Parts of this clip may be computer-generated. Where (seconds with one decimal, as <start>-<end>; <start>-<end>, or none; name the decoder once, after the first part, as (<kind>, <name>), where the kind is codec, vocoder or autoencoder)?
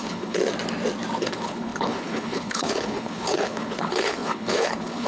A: 0.0-0.4 (codec, HILCodec); 1.2-5.1